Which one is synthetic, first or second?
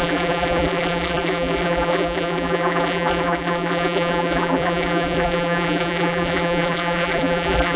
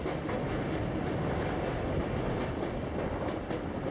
first